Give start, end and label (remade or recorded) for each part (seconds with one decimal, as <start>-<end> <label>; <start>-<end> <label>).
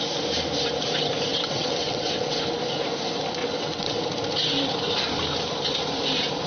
0.0-1.3 recorded; 1.3-2.4 remade; 2.4-3.4 recorded; 3.4-4.0 remade; 4.0-6.5 recorded